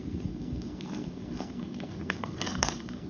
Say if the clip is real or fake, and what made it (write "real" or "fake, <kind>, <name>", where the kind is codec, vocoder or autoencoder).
fake, codec, SNAC